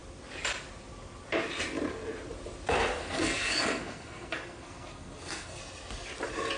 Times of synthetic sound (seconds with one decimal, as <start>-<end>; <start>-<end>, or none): 3.0-5.6